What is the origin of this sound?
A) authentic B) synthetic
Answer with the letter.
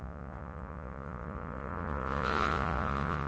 B